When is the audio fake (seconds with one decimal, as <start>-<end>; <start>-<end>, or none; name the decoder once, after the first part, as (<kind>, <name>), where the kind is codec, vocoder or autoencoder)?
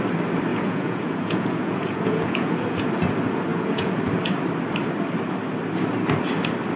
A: 0.5-2.8 (vocoder, Vocos); 3.5-4.0